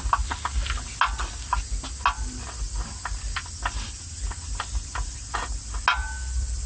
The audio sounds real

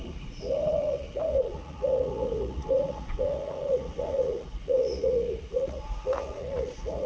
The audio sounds fake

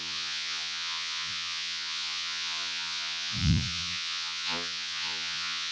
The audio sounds fake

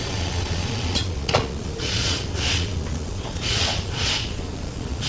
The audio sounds fake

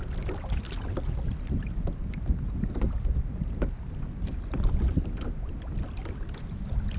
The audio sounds real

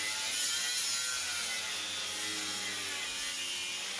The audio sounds real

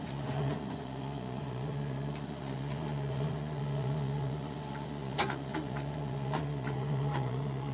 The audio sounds fake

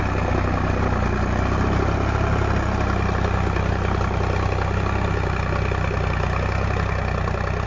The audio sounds real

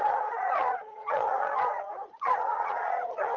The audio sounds fake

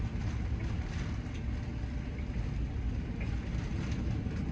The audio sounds real